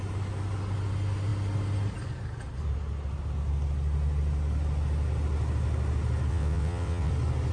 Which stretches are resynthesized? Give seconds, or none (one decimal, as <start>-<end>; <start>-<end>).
6.3-7.1